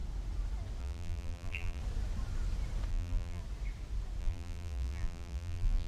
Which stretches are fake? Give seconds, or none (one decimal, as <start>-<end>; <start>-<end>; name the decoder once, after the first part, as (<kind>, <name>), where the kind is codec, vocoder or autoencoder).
0.8-1.8 (vocoder, BigVGAN v2); 2.9-3.4; 4.2-5.9